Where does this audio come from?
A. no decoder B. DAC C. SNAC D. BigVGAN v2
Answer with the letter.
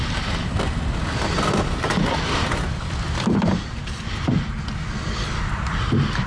A